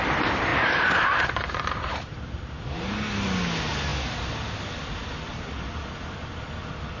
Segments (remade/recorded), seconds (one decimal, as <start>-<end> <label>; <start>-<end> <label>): 0.0-0.5 recorded; 0.5-2.6 remade; 2.6-7.0 recorded